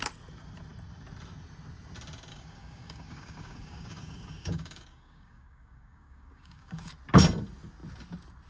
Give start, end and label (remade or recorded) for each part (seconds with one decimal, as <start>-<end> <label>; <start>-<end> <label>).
0.0-2.3 recorded; 2.3-6.9 remade; 6.9-8.5 recorded